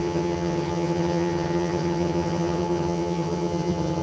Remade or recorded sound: remade